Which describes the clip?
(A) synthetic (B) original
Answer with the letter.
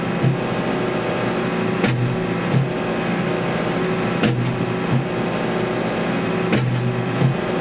B